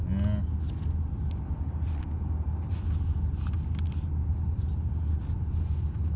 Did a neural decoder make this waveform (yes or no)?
no